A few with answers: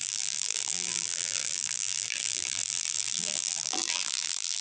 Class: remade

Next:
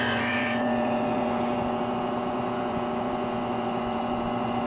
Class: remade